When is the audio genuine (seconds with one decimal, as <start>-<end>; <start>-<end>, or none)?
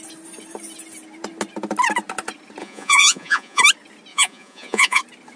0.0-2.6; 3.6-4.1; 5.0-5.4